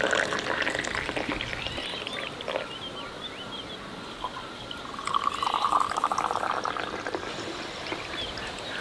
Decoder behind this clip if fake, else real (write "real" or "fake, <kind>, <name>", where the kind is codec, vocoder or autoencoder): real